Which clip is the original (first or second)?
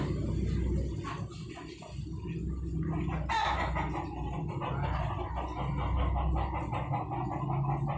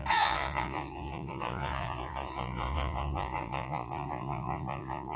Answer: first